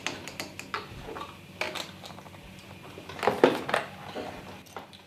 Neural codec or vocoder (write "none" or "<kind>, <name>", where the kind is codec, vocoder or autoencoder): none